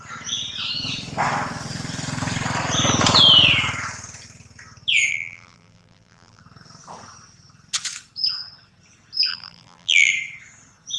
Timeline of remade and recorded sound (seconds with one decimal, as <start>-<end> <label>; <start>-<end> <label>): 0.0-5.1 recorded; 5.1-6.4 remade; 6.4-9.3 recorded; 9.3-10.1 remade; 10.1-11.0 recorded